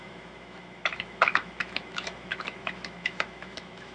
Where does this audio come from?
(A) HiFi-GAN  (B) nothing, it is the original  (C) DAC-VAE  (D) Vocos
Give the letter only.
C